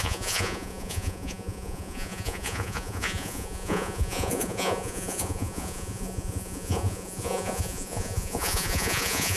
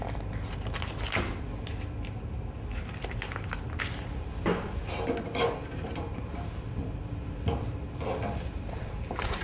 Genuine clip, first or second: second